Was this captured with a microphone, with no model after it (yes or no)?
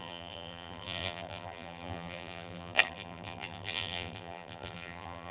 no